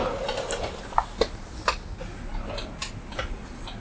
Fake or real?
real